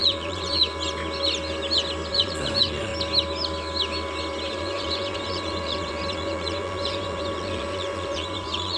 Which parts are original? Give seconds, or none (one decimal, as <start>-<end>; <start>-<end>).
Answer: 0.6-2.1; 2.9-4.5